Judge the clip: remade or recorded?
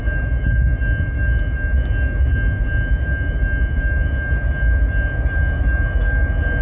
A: recorded